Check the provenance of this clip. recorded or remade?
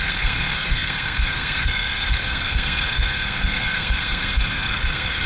remade